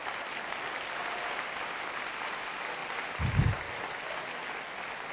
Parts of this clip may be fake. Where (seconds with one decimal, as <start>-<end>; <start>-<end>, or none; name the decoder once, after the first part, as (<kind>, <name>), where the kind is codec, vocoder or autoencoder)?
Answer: none